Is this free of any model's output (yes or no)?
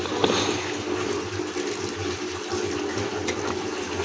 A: yes